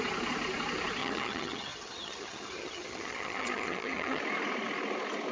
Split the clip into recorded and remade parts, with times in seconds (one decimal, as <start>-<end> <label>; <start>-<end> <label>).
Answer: 0.0-1.0 recorded; 1.0-4.2 remade; 4.2-5.3 recorded